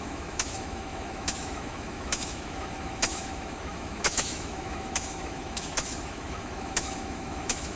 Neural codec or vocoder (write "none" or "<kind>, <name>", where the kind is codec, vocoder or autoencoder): autoencoder, DAC-VAE